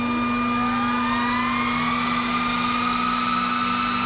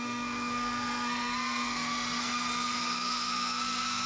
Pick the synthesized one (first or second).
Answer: second